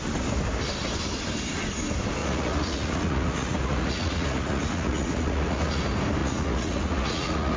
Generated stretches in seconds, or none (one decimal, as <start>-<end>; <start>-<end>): 2.2-5.8; 6.2-7.6